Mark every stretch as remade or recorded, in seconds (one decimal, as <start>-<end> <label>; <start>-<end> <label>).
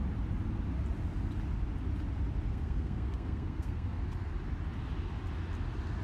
0.0-2.5 recorded; 2.5-4.0 remade; 4.0-6.0 recorded